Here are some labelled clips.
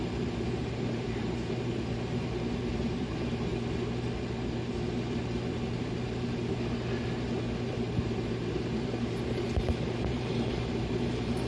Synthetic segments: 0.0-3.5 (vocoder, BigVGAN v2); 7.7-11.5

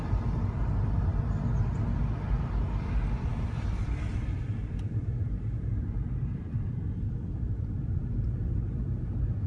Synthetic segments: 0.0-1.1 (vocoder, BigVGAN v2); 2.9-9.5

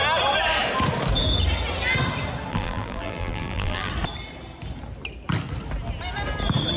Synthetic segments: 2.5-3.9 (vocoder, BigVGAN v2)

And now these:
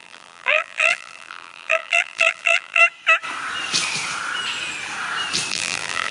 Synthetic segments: 0.0-2.8 (vocoder, BigVGAN v2); 5.5-6.1

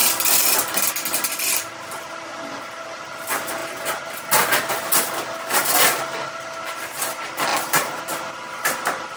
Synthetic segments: 7.5-8.0 (vocoder, BigVGAN v2)

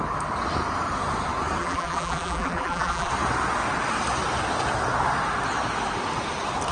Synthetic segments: 1.6-3.1 (vocoder, BigVGAN v2)

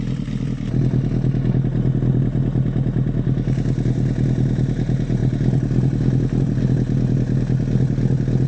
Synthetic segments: 5.2-6.4 (vocoder, BigVGAN v2)

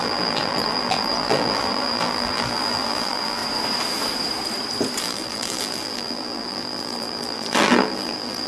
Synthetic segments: 0.0-3.4 (vocoder, BigVGAN v2); 5.0-8.5